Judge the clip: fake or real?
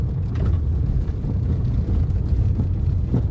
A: fake